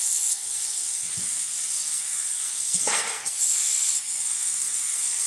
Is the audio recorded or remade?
remade